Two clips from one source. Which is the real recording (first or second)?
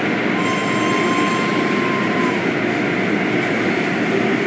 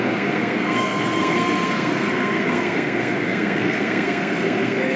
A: first